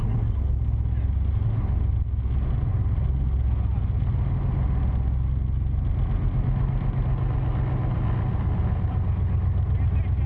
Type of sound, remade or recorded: recorded